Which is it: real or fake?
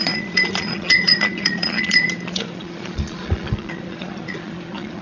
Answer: fake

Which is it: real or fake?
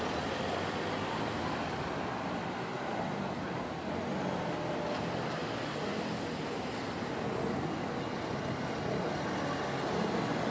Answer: real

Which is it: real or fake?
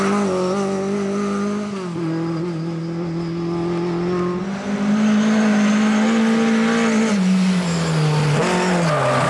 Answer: real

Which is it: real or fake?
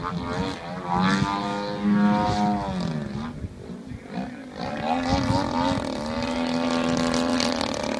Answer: real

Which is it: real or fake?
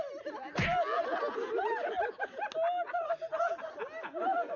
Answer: real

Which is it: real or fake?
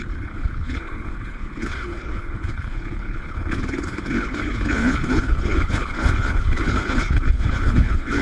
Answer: fake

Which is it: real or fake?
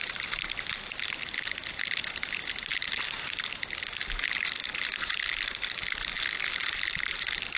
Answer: real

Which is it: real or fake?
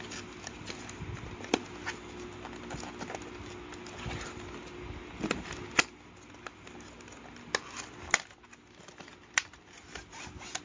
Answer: real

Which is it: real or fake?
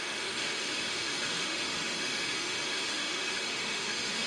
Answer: fake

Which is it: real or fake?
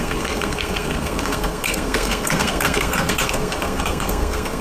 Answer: fake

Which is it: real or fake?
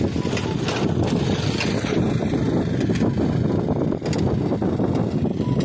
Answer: real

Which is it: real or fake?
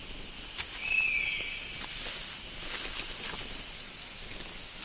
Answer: real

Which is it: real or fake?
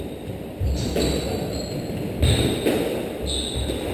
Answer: real